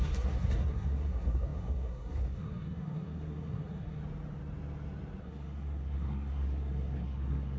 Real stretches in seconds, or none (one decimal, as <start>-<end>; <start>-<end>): 4.0-5.2